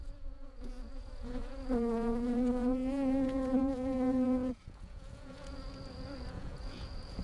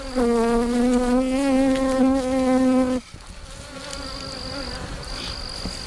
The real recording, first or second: second